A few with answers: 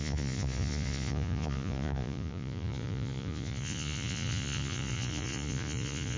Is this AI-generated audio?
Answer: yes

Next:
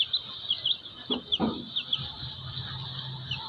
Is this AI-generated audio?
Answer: no